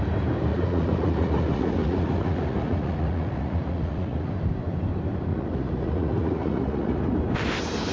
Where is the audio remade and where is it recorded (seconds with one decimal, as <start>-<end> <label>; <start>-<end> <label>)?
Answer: 0.0-0.5 recorded; 0.5-4.3 remade; 4.3-5.3 recorded; 5.3-7.1 remade; 7.1-7.9 recorded